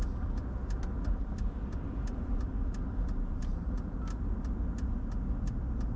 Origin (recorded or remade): recorded